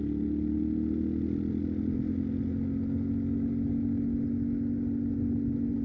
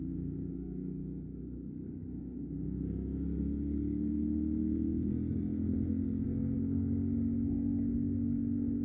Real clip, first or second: first